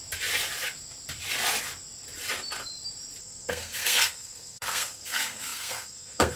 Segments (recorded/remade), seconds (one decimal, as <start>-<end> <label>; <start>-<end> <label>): 0.0-3.2 recorded; 3.2-6.4 remade

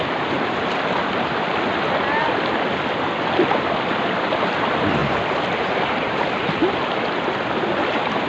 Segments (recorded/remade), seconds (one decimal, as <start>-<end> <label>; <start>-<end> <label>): 0.0-8.3 recorded

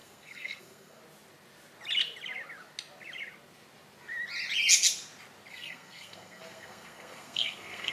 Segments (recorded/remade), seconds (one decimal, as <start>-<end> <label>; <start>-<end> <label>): 0.0-1.0 remade; 1.0-5.5 recorded; 5.5-7.9 remade

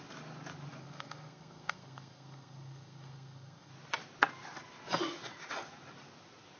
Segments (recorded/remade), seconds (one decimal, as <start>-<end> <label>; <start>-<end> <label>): 0.0-0.8 recorded; 0.8-3.7 remade; 3.7-6.6 recorded

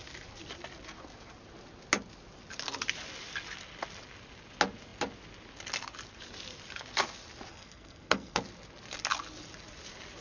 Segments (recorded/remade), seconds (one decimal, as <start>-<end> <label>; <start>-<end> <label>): 0.0-7.5 recorded; 7.5-8.4 remade; 8.4-10.2 recorded